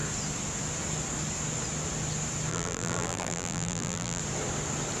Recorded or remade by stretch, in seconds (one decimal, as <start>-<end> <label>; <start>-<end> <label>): 0.0-2.5 recorded; 2.5-4.2 remade; 4.2-5.0 recorded